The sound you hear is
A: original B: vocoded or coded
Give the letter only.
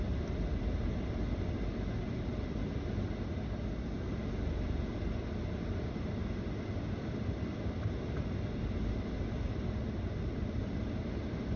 A